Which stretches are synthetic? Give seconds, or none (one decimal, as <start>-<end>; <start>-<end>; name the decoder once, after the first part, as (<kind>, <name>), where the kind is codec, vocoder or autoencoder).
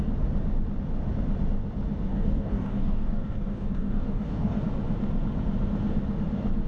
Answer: 2.1-4.6 (codec, DAC)